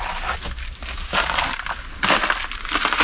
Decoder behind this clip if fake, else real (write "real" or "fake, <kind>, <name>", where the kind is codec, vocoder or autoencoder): real